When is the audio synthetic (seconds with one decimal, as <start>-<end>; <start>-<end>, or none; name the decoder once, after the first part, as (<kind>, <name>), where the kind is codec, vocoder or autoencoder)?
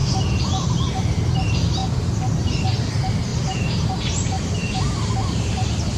1.8-2.9 (vocoder, BigVGAN v2); 3.3-6.0